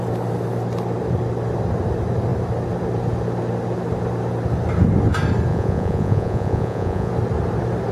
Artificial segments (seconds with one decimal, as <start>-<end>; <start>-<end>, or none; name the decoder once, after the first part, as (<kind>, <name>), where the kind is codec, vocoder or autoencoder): 5.5-7.1 (vocoder, Vocos)